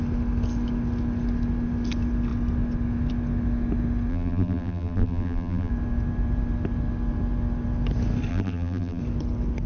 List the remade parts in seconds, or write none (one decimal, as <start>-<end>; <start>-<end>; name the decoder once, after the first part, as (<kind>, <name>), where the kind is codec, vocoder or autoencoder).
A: 4.1-5.7 (vocoder, BigVGAN v2); 8.3-9.0